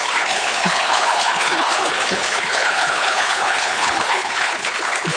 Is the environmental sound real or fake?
fake